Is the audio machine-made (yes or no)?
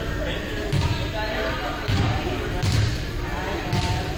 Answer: no